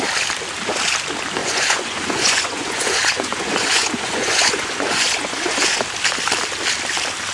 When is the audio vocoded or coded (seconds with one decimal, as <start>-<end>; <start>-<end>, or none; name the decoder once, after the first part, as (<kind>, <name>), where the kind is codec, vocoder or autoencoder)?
1.4-5.8 (vocoder, Vocos)